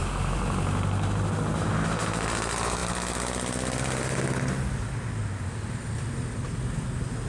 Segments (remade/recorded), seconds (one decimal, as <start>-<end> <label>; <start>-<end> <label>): 0.0-7.3 recorded